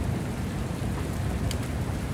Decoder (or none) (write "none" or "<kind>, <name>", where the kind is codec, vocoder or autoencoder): none